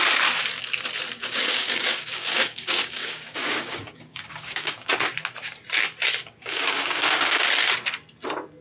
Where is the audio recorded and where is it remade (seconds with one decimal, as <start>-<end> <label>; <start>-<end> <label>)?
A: 0.0-1.2 recorded; 1.2-4.9 remade; 4.9-6.2 recorded; 6.2-7.5 remade; 7.5-8.6 recorded